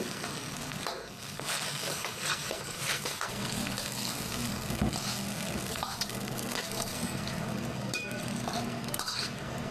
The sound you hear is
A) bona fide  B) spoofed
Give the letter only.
B